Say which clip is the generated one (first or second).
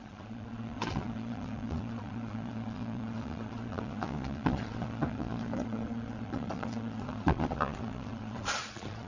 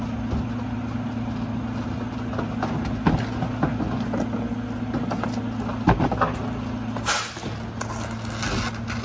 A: first